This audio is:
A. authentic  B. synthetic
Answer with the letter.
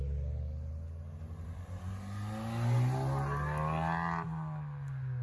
A